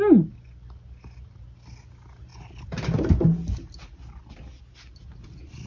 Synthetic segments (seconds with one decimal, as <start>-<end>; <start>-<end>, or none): none